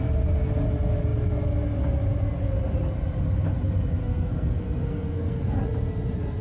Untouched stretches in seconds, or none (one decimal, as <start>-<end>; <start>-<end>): 0.0-4.0; 5.6-6.4